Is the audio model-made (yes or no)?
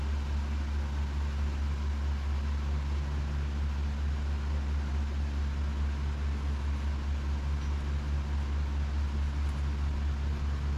no